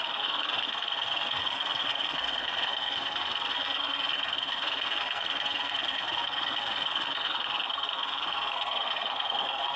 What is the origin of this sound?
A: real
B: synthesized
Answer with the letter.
B